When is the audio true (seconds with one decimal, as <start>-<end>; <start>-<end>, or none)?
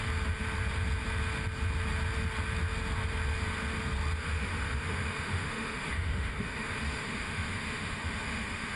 0.0-4.2